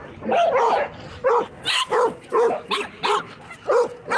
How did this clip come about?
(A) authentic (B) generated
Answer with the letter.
A